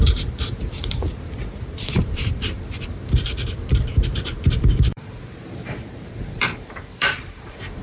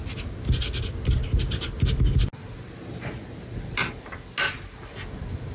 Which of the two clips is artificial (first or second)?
first